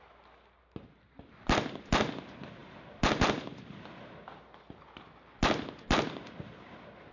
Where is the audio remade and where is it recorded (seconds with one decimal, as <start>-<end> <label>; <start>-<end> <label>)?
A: 0.0-7.1 recorded